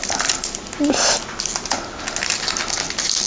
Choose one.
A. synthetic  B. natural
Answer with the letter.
B